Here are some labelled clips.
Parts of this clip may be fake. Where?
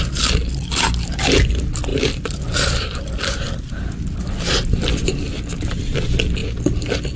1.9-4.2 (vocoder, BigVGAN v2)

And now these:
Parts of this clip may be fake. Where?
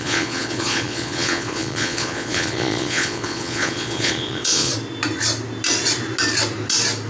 0.0-4.7 (vocoder, Vocos)